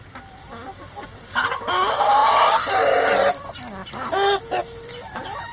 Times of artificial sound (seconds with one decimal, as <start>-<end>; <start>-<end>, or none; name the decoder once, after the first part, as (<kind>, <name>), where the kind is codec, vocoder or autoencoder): none